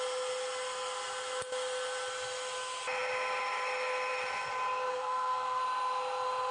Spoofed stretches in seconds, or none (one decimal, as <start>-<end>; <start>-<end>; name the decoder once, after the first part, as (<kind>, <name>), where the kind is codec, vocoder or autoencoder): 4.9-5.6 (codec, SNAC)